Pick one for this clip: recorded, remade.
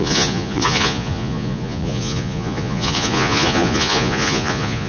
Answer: remade